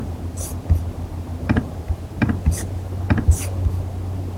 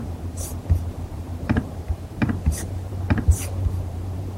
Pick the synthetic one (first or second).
second